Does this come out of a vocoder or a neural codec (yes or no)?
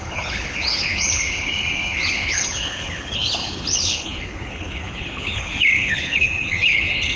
yes